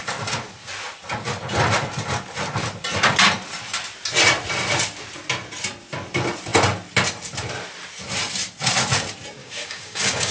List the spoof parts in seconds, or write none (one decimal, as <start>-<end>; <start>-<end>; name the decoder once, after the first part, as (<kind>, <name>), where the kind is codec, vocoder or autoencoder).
9.4-10.3 (codec, DAC)